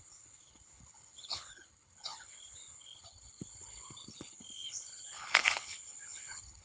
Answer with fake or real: fake